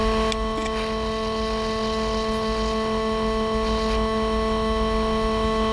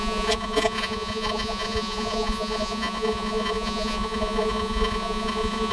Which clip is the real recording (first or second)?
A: first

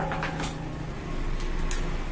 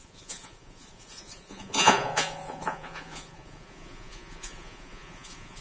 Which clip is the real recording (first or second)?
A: first